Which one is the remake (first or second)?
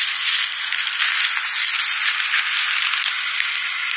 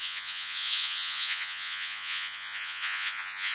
second